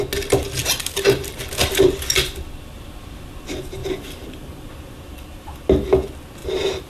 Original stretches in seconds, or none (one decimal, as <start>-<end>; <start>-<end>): 0.0-0.6; 1.4-3.8; 4.7-6.4

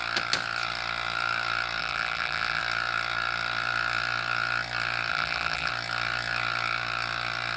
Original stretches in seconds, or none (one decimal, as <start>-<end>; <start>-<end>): 0.0-1.8; 2.6-5.1; 5.7-7.6

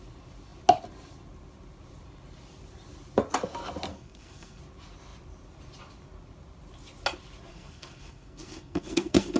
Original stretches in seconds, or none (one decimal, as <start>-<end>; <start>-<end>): 0.0-3.9; 4.6-7.5